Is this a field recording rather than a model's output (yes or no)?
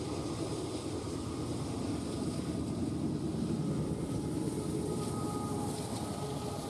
yes